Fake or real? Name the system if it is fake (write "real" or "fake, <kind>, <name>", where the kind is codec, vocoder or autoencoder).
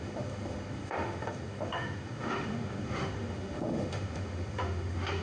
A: fake, autoencoder, DAC-VAE